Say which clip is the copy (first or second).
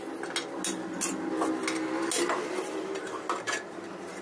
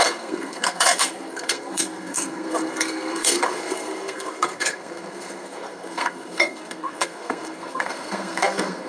second